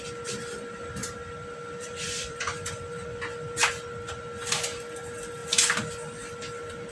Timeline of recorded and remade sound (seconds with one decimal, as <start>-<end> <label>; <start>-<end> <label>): 0.0-1.0 recorded; 1.0-2.7 remade; 2.7-5.4 recorded; 5.4-5.9 remade; 5.9-6.9 recorded